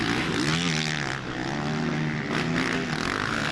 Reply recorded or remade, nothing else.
recorded